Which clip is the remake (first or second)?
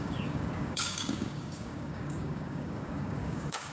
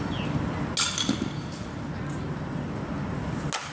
first